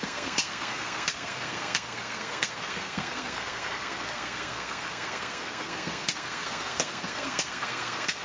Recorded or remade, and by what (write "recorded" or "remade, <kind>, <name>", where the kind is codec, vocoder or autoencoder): remade, codec, SNAC